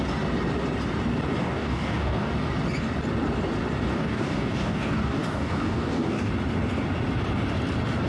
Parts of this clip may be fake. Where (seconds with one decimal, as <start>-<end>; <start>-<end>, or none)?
1.4-2.3; 3.9-6.3